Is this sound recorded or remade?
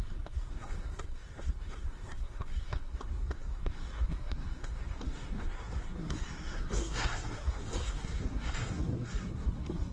remade